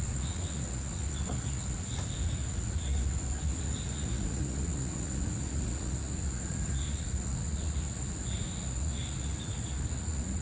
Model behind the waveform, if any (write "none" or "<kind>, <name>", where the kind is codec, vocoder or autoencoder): vocoder, Vocos